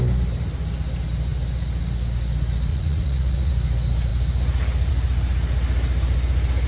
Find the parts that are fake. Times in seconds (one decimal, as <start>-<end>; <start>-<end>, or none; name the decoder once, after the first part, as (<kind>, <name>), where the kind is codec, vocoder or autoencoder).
2.7-3.5 (vocoder, Vocos)